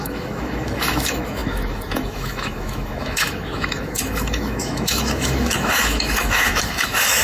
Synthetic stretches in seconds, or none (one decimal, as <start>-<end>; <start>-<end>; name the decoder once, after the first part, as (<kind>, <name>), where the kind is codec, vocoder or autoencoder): 0.0-7.2 (autoencoder, DAC-VAE)